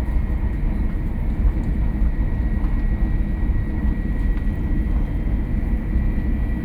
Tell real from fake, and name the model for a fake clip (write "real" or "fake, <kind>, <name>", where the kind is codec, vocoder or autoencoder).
real